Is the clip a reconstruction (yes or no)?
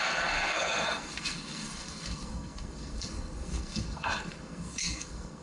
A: yes